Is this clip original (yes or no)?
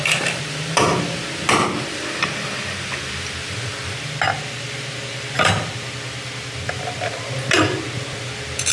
yes